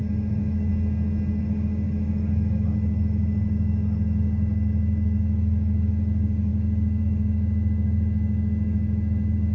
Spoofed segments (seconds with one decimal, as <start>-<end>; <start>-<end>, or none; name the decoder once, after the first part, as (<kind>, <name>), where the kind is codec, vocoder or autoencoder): 0.0-0.7 (autoencoder, DAC-VAE); 1.4-9.5